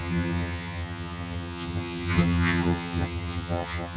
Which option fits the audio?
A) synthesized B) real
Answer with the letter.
A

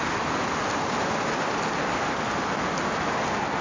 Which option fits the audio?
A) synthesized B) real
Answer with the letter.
B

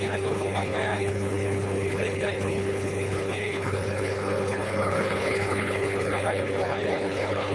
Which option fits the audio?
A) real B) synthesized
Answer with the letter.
B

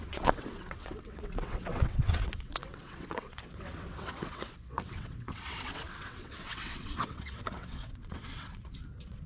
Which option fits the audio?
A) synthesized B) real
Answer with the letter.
A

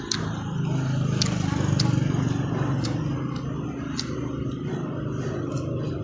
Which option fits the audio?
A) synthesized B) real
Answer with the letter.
B